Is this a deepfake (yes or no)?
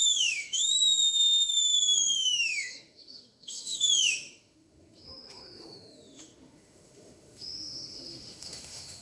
yes